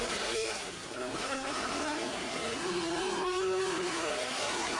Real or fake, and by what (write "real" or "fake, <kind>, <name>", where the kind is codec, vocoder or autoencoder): fake, codec, SNAC